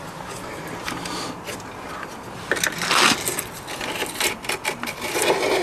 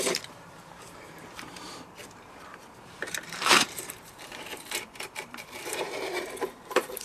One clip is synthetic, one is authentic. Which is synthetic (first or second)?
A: second